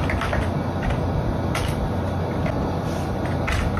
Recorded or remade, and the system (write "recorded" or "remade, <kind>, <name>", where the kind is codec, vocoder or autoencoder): recorded